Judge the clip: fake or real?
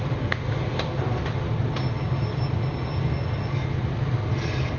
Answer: real